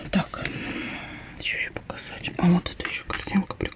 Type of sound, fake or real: real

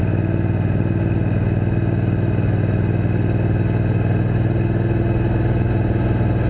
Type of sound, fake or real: real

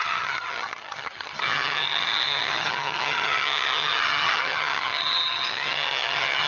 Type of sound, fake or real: fake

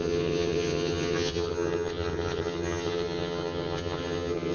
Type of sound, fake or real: fake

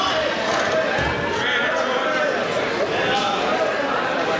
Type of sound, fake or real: real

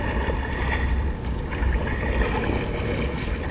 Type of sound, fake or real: real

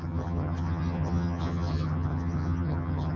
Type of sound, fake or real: fake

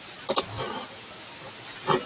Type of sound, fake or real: real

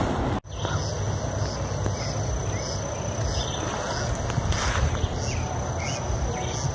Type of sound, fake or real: real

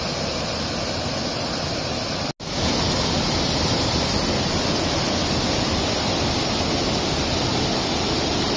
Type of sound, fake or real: real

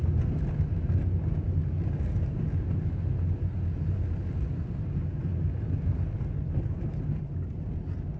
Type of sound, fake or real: real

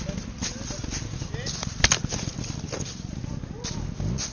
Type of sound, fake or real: real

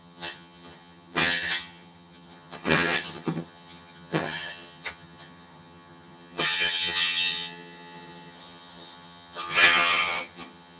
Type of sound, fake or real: fake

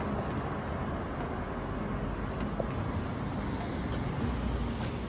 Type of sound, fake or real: real